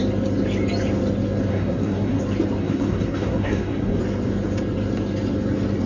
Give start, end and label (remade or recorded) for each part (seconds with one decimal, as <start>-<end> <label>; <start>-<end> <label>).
0.0-1.5 recorded; 1.5-2.2 remade; 2.2-2.6 recorded; 2.6-4.0 remade; 4.0-5.9 recorded